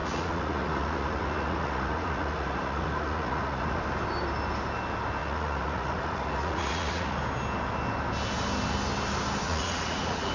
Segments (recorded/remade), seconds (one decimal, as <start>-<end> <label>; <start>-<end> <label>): 0.0-3.8 remade; 3.8-5.2 recorded; 5.2-7.2 remade; 7.2-9.4 recorded; 9.4-10.3 remade